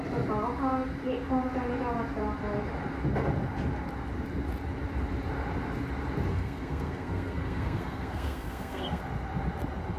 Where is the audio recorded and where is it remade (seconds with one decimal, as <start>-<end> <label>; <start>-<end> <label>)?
0.0-6.3 recorded; 6.3-9.0 remade; 9.0-10.0 recorded